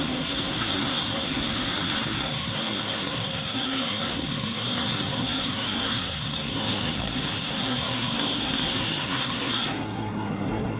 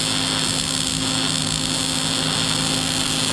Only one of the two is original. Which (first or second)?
second